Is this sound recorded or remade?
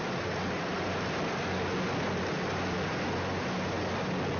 recorded